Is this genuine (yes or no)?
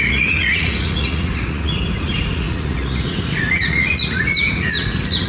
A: no